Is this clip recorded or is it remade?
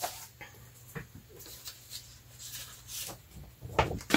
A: recorded